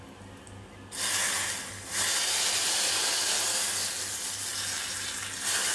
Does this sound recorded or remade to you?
recorded